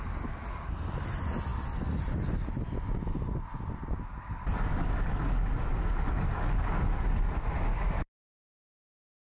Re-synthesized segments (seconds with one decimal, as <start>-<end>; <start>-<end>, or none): 4.7-7.0; 7.7-8.5